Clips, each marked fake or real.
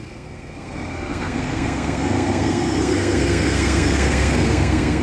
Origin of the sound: fake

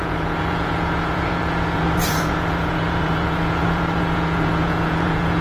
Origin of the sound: fake